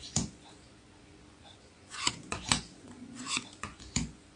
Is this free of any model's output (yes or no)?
no